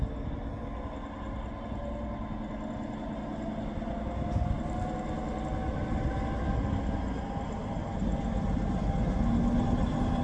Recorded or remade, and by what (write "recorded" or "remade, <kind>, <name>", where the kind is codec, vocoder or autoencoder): recorded